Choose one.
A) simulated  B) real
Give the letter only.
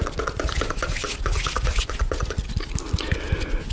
B